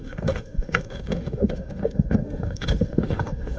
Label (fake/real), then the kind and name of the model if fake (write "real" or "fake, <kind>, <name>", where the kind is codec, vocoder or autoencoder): fake, autoencoder, DAC-VAE